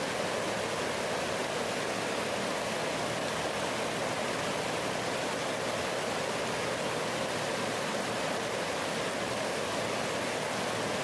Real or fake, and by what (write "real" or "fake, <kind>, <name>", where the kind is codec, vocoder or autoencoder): real